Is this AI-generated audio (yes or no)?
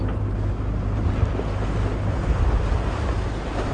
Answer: no